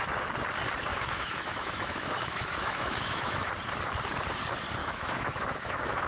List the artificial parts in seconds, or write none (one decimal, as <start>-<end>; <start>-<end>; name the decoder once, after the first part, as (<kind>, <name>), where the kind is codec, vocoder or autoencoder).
0.9-3.5 (autoencoder, DAC-VAE); 4.8-6.1

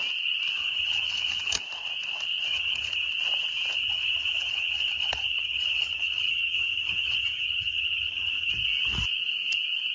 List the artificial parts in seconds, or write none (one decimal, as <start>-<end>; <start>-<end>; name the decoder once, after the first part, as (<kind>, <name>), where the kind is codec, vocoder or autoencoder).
0.6-1.6 (vocoder, HiFi-GAN); 2.5-3.1; 3.8-8.5

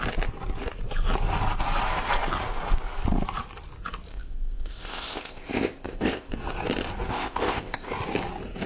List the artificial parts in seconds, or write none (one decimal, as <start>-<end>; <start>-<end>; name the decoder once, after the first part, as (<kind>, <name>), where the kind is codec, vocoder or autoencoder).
4.1-6.3 (codec, ZipCodec); 7.1-7.9